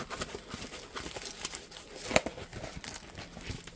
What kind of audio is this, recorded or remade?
recorded